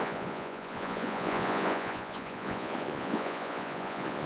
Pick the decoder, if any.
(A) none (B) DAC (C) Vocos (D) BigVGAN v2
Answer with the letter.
C